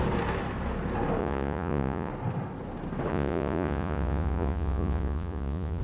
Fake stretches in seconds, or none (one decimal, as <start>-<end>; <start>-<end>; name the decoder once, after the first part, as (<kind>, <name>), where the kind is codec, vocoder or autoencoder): 1.2-2.1 (vocoder, Vocos); 3.1-5.8